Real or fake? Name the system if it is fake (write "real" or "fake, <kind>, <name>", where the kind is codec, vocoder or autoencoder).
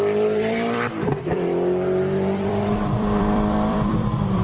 fake, vocoder, BigVGAN v2